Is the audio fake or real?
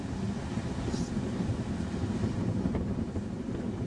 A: fake